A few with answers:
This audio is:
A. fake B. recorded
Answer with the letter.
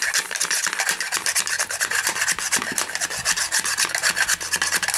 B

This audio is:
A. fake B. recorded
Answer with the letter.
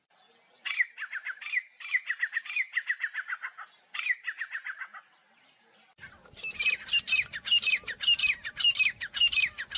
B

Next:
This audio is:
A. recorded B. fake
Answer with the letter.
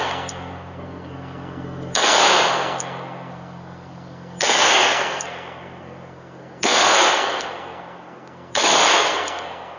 B